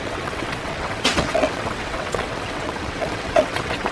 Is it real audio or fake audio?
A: fake